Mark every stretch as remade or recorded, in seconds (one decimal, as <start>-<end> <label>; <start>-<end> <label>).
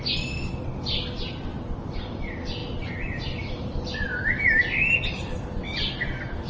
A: 0.0-6.5 recorded